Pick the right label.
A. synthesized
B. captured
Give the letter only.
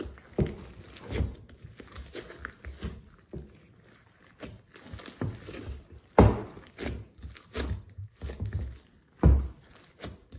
B